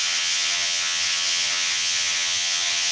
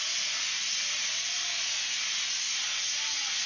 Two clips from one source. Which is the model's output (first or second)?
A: first